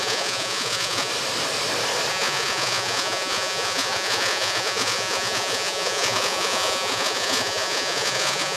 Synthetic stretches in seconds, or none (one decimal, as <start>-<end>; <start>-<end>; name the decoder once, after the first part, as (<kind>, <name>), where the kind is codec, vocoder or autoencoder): 0.0-1.1 (vocoder, Vocos); 2.1-8.6